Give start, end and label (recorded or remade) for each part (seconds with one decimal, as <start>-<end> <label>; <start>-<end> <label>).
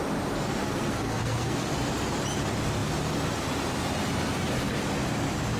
0.0-0.6 recorded; 0.6-1.7 remade; 1.7-5.6 recorded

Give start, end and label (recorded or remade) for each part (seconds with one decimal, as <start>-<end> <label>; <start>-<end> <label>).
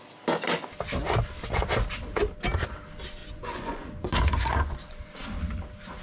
0.0-3.2 recorded; 3.2-5.1 remade; 5.1-6.0 recorded